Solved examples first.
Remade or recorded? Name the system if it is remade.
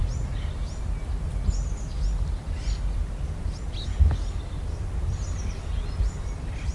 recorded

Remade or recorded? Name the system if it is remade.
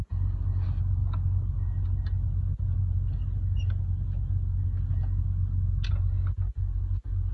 recorded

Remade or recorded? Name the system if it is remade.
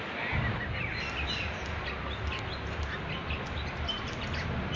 recorded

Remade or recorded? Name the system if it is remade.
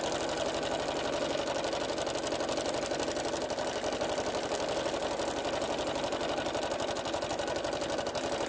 recorded